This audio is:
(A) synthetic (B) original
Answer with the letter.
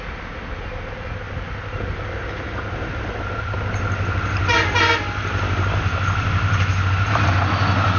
B